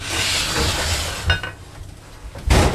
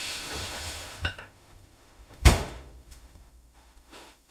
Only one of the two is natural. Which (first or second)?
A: first